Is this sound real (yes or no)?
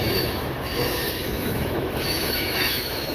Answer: no